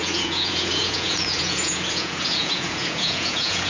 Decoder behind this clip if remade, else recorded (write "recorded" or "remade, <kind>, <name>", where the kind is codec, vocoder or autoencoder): remade, vocoder, Vocos